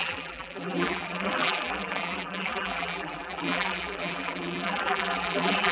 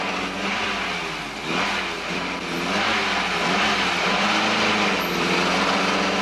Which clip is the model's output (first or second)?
first